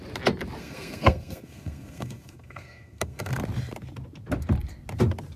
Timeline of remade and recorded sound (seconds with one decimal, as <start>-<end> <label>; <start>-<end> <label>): 0.0-0.6 recorded; 0.6-3.3 remade; 3.3-5.4 recorded